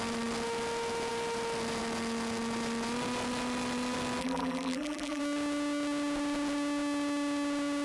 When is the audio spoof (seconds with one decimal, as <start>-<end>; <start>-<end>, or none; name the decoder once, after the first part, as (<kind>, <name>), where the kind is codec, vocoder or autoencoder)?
4.2-5.2 (vocoder, BigVGAN v2)